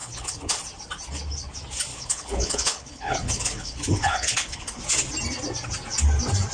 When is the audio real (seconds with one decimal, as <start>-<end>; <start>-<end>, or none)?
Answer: 0.6-1.9; 4.8-6.5